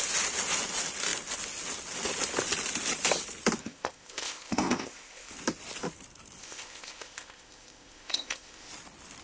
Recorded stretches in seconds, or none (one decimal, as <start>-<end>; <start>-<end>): 0.0-3.6; 5.3-6.4; 8.7-9.2